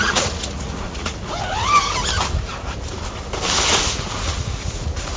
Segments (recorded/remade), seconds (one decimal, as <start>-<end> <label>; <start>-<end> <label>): 0.0-1.1 remade; 1.1-4.2 recorded; 4.2-5.2 remade